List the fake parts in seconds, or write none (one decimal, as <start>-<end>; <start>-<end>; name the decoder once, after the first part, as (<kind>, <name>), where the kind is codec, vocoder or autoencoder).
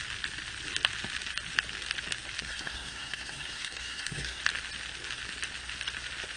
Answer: 2.4-4.4 (codec, SNAC)